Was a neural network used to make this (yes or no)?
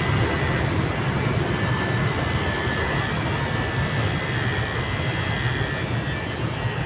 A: no